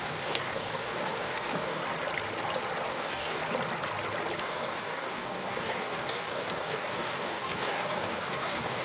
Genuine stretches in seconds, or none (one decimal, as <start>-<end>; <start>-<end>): 1.8-2.9; 3.4-4.4